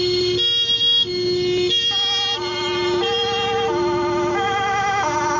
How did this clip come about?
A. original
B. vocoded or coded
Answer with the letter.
A